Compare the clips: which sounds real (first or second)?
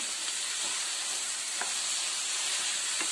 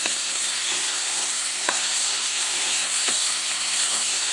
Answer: first